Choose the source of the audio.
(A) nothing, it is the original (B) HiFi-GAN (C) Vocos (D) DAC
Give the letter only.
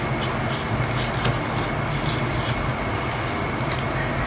A